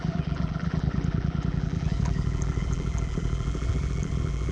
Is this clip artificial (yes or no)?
yes